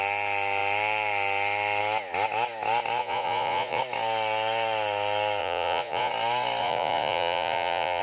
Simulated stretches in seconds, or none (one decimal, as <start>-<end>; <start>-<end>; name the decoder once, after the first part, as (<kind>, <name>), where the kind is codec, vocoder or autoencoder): 3.0-3.8 (vocoder, Vocos); 5.4-6.1; 6.6-8.0

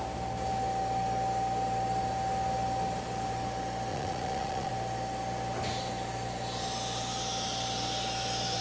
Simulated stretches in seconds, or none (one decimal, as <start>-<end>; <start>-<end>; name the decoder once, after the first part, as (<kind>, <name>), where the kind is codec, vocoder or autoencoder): 3.9-4.7 (vocoder, Vocos)

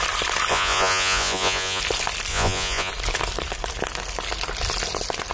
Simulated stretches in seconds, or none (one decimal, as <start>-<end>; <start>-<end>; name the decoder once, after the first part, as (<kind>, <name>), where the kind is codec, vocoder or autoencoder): 0.5-1.8 (vocoder, Vocos); 2.3-2.9

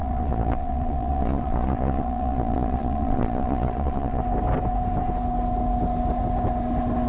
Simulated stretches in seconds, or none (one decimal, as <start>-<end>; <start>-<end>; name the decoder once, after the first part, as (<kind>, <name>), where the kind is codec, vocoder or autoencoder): 0.0-4.2 (vocoder, Vocos)

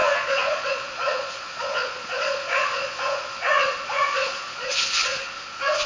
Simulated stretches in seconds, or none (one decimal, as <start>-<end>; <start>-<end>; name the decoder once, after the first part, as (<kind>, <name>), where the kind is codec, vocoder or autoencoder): 0.0-5.9 (vocoder, Vocos)

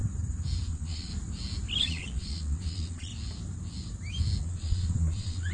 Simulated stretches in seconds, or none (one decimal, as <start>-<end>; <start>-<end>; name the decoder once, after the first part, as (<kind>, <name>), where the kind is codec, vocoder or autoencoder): 0.7-1.1 (vocoder, Vocos); 1.8-3.1; 4.4-5.5

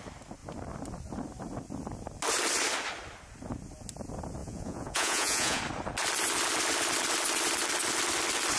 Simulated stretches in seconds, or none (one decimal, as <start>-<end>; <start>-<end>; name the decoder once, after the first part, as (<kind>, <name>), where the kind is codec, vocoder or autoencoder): 4.4-5.6 (vocoder, Vocos)